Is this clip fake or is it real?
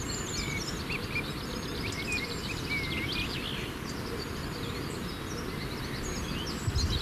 real